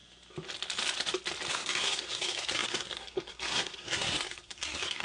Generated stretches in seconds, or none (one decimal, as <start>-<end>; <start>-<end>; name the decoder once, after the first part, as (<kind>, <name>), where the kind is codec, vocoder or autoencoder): 1.5-5.0 (codec, SNAC)